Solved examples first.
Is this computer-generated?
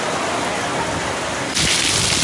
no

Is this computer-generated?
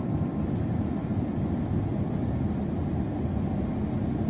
yes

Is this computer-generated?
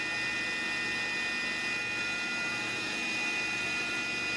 no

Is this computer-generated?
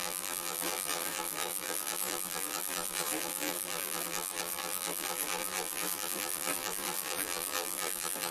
yes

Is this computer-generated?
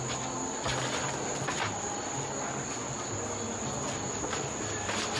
no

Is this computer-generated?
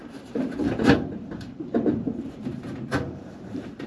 yes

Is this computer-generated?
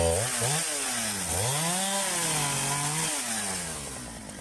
no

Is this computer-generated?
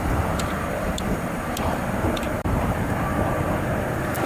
yes